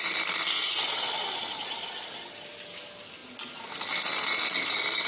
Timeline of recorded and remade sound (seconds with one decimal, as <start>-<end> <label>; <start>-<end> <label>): 0.0-5.1 recorded